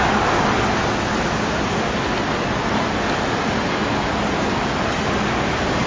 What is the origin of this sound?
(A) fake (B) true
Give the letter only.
B